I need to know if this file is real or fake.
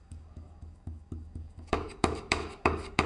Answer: fake